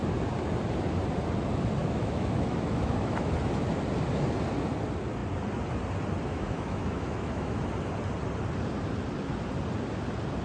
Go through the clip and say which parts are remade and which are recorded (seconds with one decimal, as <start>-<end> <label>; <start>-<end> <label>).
0.0-1.8 recorded; 1.8-3.3 remade; 3.3-6.3 recorded; 6.3-7.6 remade; 7.6-10.4 recorded